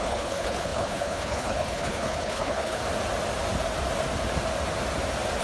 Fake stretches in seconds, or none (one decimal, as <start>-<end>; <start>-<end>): 0.0-2.8